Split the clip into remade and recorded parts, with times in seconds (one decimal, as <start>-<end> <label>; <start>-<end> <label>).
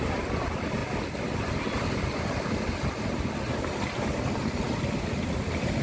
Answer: 0.0-5.8 recorded